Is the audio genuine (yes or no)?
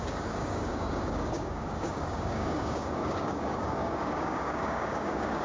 no